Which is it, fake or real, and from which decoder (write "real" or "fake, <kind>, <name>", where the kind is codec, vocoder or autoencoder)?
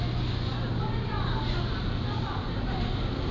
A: real